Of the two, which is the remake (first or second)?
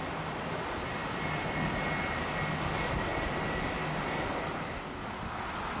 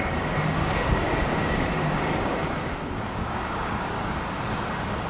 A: second